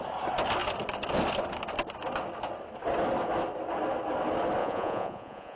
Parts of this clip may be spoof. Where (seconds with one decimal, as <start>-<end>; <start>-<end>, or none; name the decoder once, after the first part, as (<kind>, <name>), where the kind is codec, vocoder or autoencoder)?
4.6-5.6 (vocoder, Vocos)